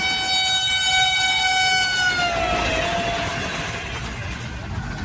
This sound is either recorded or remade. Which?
recorded